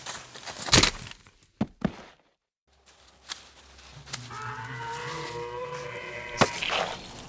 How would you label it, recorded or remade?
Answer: recorded